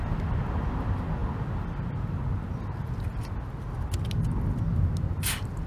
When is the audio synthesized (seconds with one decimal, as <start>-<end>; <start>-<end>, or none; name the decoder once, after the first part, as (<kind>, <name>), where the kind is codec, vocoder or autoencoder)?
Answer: none